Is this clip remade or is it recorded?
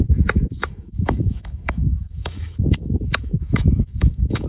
remade